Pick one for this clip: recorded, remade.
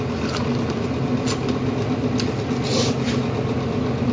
recorded